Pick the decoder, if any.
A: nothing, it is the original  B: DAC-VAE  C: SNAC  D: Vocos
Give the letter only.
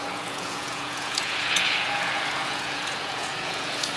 D